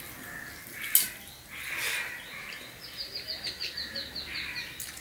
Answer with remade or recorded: recorded